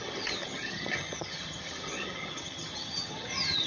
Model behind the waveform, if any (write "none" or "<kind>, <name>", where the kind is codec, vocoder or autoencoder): vocoder, HiFi-GAN